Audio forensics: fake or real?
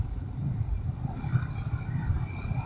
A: fake